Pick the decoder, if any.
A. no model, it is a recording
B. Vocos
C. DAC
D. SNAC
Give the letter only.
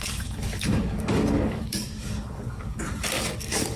C